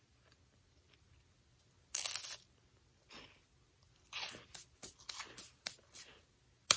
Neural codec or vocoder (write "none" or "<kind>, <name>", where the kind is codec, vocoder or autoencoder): none